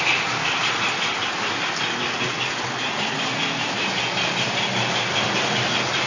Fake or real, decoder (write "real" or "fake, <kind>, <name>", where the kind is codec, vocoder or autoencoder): real